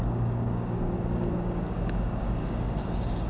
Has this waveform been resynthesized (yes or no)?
yes